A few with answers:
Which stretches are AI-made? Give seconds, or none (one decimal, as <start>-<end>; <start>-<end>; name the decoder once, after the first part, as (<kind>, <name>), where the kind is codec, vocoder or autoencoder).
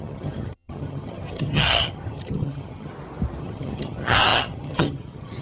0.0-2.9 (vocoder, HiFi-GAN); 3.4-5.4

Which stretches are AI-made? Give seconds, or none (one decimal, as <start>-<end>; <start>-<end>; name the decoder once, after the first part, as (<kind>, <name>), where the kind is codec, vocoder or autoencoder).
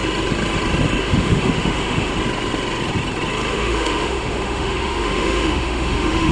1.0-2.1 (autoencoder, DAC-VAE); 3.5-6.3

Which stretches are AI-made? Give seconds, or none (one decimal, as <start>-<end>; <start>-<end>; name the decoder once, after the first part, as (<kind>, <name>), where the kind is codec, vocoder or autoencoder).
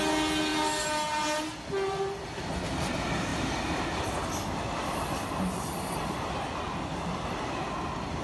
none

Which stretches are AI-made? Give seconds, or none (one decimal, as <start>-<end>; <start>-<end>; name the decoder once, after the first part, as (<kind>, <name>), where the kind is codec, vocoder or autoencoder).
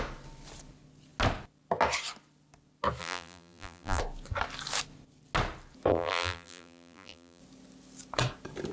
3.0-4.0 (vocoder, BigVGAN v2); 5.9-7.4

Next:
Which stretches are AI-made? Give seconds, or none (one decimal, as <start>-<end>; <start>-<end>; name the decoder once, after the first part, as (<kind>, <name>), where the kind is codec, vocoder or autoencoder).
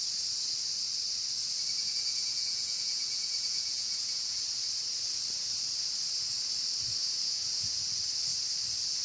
1.7-4.4 (vocoder, Vocos); 7.0-7.8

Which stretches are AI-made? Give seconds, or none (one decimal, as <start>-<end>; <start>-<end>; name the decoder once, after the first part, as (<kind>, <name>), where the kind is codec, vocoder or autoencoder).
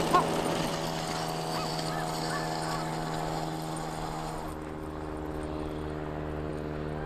none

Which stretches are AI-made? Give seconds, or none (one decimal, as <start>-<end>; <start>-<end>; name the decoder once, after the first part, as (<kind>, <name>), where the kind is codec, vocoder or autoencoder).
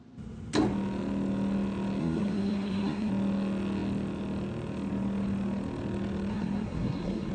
2.0-3.1 (codec, SNAC); 6.3-7.3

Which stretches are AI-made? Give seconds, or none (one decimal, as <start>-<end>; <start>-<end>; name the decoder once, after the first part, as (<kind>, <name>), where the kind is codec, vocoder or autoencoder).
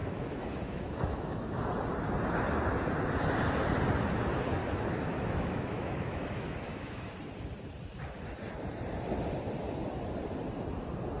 0.0-1.7 (autoencoder, DAC-VAE); 4.6-7.1